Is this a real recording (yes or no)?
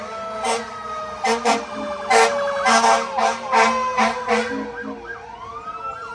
yes